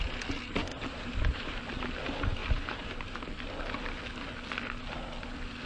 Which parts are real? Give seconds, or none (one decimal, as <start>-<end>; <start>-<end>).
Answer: 0.0-0.7; 1.6-2.4; 3.1-5.7